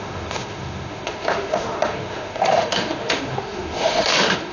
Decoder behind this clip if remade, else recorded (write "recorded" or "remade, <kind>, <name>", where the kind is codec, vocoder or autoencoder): remade, autoencoder, DAC-VAE